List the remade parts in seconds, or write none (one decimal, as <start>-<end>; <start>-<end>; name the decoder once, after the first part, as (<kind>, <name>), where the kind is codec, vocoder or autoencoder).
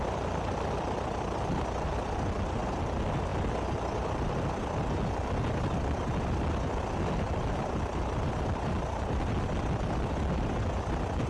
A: none